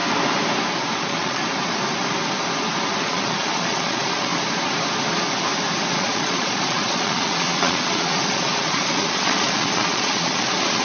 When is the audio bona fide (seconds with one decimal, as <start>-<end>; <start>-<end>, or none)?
0.0-1.0; 1.4-3.0; 4.3-5.9